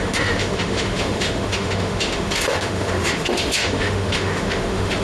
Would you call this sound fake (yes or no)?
yes